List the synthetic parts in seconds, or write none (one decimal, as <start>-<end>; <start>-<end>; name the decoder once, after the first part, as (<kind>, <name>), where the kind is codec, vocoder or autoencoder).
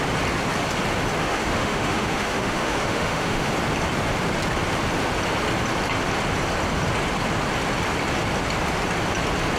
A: 1.2-3.5 (autoencoder, DAC-VAE)